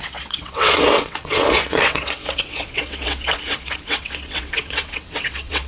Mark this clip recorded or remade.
remade